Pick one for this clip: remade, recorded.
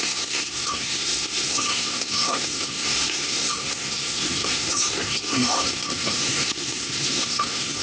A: remade